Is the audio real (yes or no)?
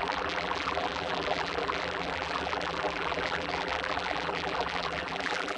no